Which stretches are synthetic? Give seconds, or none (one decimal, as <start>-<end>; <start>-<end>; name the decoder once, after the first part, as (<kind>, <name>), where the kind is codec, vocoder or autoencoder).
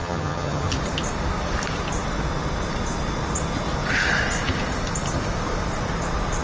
0.0-0.7 (vocoder, HiFi-GAN)